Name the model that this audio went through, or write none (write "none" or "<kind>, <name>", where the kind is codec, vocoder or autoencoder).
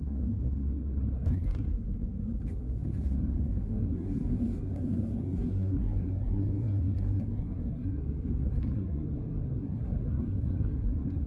codec, SNAC